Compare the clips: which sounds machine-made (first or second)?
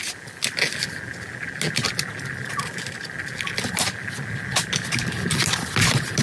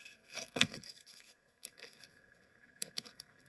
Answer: second